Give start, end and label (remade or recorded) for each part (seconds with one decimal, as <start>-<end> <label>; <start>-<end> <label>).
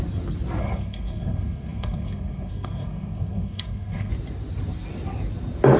0.0-0.6 recorded; 0.6-4.1 remade; 4.1-5.8 recorded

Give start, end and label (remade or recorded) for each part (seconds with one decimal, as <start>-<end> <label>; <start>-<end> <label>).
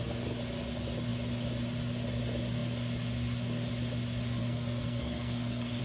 0.0-4.4 recorded; 4.4-5.8 remade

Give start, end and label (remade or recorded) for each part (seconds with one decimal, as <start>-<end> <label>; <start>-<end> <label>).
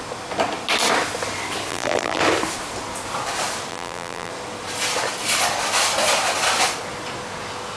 0.0-1.7 recorded; 1.7-2.2 remade; 2.2-3.7 recorded; 3.7-4.3 remade; 4.3-7.8 recorded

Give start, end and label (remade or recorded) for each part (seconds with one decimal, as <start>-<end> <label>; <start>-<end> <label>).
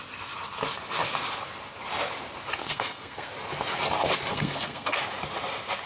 0.0-2.6 recorded; 2.6-3.3 remade; 3.3-4.3 recorded; 4.3-5.0 remade; 5.0-5.9 recorded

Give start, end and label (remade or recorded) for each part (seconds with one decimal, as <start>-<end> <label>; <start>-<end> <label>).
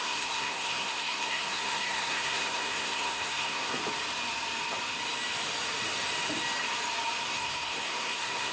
0.0-3.8 remade; 3.8-7.3 recorded; 7.3-8.5 remade